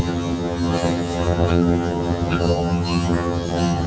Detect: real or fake fake